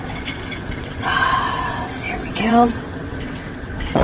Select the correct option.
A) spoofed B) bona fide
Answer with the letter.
A